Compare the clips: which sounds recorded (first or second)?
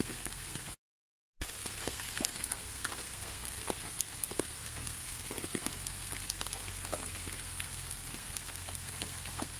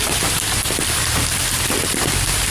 second